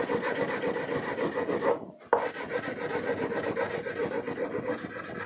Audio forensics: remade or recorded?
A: recorded